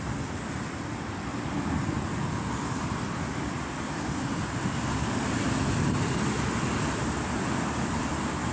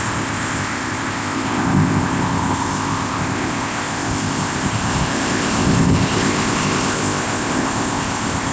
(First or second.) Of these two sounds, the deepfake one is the second